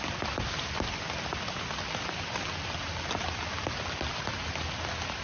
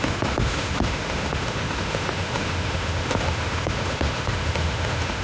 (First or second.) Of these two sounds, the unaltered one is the first